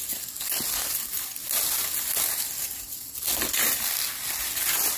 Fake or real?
real